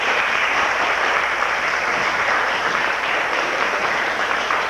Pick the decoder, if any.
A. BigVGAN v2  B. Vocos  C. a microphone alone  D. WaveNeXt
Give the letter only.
A